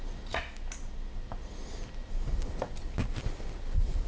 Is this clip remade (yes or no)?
no